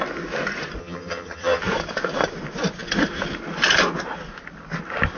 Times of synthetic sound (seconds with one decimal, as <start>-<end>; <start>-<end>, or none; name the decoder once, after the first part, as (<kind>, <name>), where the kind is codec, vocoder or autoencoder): 0.8-1.6 (vocoder, HiFi-GAN)